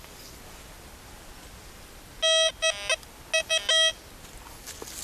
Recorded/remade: recorded